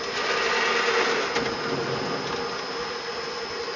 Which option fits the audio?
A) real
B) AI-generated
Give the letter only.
A